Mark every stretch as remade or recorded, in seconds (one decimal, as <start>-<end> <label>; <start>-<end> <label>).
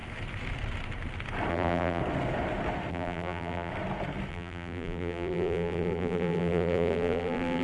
0.0-1.5 recorded; 1.5-2.0 remade; 2.0-2.9 recorded; 2.9-3.7 remade; 3.7-4.3 recorded; 4.3-7.6 remade